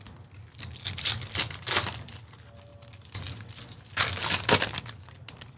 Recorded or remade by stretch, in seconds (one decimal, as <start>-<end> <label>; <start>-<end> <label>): 0.0-5.6 recorded